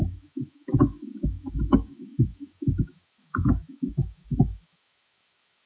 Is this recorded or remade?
remade